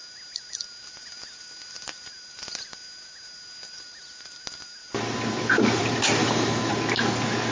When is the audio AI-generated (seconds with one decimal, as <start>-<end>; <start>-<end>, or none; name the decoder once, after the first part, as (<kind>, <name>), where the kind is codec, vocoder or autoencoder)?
6.2-6.7 (autoencoder, DAC-VAE)